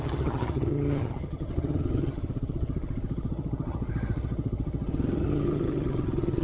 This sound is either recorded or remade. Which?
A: remade